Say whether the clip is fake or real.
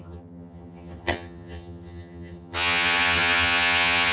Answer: fake